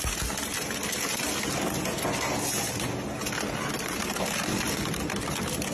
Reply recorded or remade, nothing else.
recorded